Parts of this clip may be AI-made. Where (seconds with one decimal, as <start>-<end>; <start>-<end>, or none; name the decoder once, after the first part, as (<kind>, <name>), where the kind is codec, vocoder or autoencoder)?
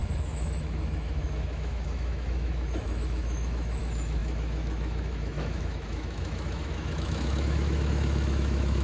0.0-8.8 (autoencoder, DAC-VAE)